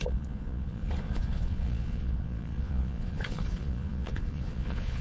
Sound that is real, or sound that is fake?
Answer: fake